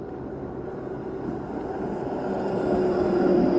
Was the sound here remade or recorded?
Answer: recorded